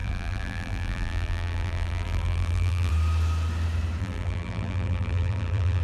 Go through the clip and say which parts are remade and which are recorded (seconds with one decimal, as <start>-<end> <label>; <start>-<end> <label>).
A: 0.0-2.9 remade; 2.9-4.0 recorded; 4.0-5.8 remade